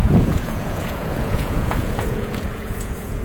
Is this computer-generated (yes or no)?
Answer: yes